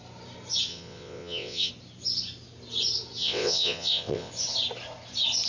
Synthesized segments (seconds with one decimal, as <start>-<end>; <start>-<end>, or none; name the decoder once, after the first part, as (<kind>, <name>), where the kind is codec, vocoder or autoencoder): 0.7-1.7 (vocoder, WaveNeXt); 3.2-4.3